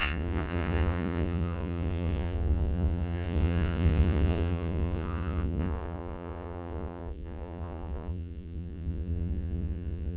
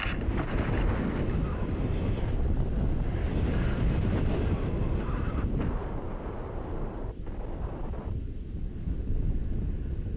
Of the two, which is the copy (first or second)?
first